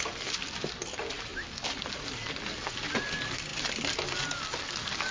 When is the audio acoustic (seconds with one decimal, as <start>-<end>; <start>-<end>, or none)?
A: 0.0-5.1

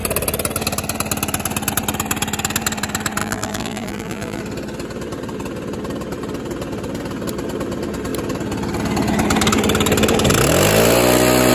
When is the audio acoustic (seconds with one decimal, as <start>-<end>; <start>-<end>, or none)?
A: 0.0-3.2; 4.4-11.5